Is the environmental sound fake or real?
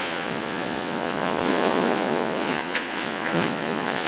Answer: fake